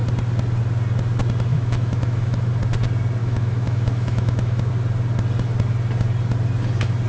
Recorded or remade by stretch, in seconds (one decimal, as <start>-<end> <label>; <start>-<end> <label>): 0.0-1.5 recorded; 1.5-2.5 remade; 2.5-3.2 recorded; 3.2-4.7 remade; 4.7-7.1 recorded